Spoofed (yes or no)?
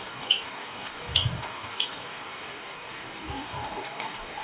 yes